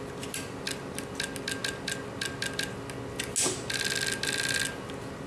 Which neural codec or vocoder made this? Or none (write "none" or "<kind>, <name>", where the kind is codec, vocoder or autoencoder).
none